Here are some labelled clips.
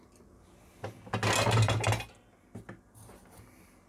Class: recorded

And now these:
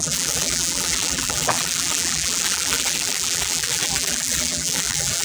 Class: remade